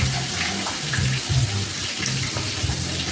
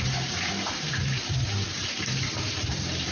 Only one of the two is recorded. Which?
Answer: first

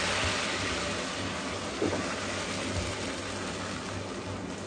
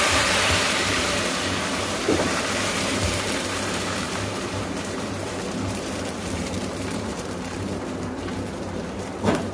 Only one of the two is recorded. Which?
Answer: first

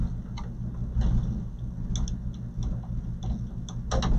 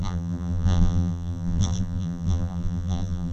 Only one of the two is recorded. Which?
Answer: first